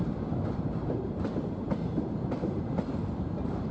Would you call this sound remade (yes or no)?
yes